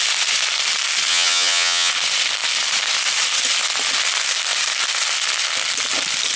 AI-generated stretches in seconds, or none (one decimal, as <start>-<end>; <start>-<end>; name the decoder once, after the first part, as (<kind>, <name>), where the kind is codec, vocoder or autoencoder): 1.1-1.9 (vocoder, HiFi-GAN)